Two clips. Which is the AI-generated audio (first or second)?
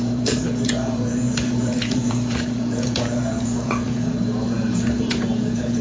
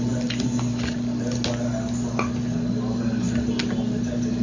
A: first